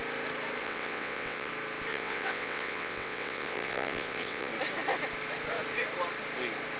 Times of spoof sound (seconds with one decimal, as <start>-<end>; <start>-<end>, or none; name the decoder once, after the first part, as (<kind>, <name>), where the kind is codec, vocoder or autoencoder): 0.6-1.5 (vocoder, WaveNeXt); 1.9-4.5